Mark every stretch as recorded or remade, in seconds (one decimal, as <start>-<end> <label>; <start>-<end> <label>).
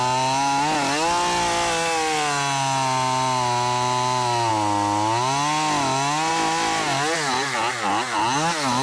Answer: 0.0-8.8 recorded